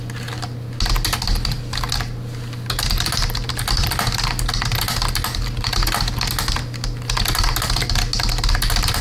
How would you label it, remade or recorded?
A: recorded